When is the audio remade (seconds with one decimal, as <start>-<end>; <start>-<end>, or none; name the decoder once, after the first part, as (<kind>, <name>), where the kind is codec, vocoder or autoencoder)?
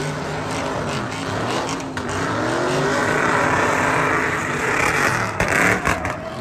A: 3.0-4.9 (vocoder, BigVGAN v2)